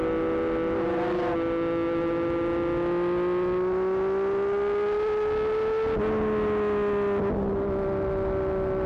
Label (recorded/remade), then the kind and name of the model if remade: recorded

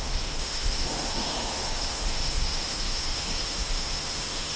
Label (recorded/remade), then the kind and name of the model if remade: remade, autoencoder, DAC-VAE